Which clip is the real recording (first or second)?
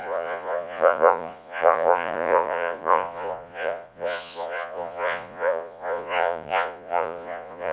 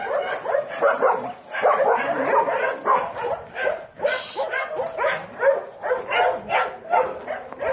second